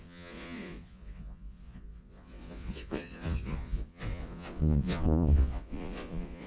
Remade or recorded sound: remade